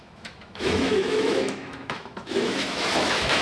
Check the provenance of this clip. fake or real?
fake